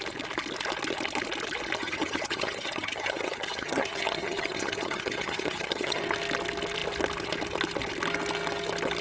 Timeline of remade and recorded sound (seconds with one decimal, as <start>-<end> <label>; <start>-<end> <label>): 0.0-1.8 recorded; 1.8-6.0 remade; 6.0-9.0 recorded

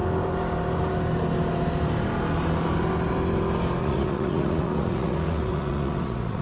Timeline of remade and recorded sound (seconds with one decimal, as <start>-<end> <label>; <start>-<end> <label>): 0.0-3.8 recorded; 3.8-6.4 remade

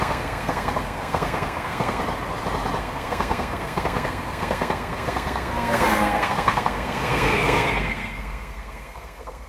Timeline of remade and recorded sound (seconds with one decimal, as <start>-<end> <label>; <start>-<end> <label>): 0.0-2.0 remade; 2.0-2.8 recorded; 2.8-9.5 remade

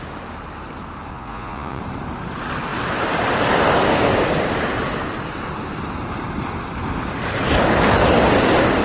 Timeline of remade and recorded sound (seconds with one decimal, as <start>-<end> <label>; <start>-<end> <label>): 0.0-1.1 recorded; 1.1-1.8 remade; 1.8-8.8 recorded

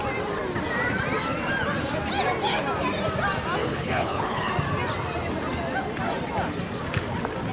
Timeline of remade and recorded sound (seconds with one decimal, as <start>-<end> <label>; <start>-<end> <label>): 0.0-3.6 recorded; 3.6-4.5 remade; 4.5-7.5 recorded

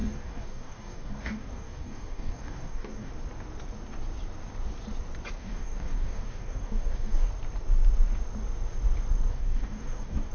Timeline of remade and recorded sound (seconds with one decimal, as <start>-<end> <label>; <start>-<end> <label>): 0.0-3.1 remade; 3.1-5.4 recorded; 5.4-7.3 remade; 7.3-9.3 recorded; 9.3-10.3 remade